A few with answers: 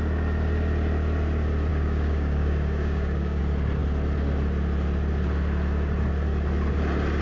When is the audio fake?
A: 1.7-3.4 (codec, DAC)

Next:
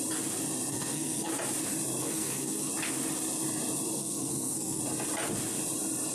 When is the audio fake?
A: 0.7-1.3 (codec, SNAC); 2.0-2.7; 4.0-4.8

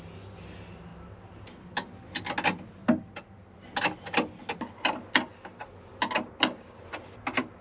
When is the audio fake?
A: none

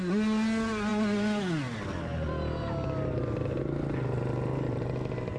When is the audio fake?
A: none

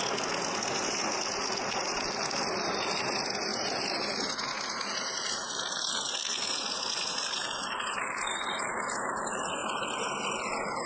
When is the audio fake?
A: none

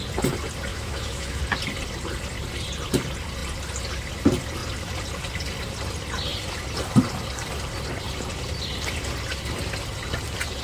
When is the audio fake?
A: 0.7-1.4 (autoencoder, DAC-VAE)

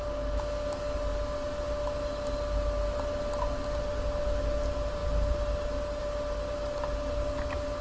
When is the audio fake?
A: none

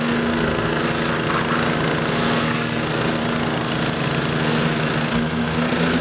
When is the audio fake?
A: 0.0-0.8 (codec, SNAC); 2.1-3.2; 4.4-6.0